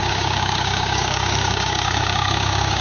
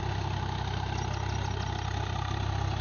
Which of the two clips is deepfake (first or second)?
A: first